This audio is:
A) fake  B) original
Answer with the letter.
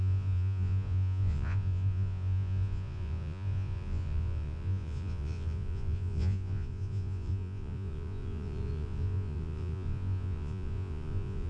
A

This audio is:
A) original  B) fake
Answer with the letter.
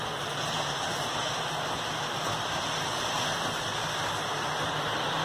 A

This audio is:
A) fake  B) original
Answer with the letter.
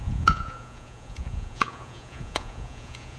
A